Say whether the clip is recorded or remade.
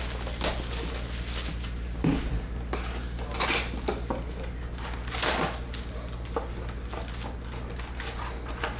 recorded